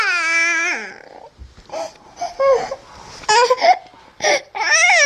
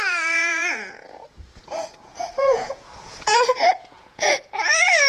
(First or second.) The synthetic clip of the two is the second